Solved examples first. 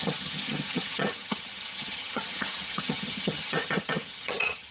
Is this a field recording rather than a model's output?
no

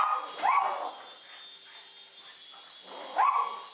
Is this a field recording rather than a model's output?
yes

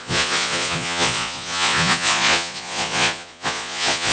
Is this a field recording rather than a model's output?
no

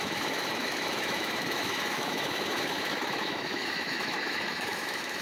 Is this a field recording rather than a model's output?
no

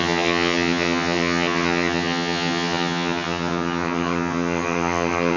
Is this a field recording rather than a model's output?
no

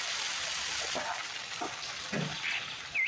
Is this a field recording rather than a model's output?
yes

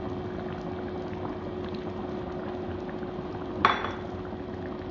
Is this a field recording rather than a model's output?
yes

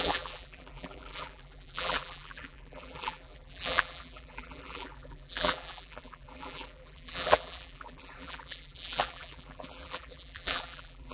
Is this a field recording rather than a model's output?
no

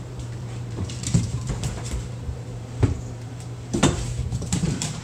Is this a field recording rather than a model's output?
no